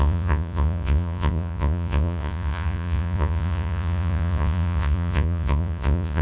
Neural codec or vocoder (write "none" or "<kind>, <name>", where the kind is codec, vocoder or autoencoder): vocoder, Vocos